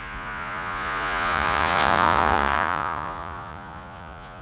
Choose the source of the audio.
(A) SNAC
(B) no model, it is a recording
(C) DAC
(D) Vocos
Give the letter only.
D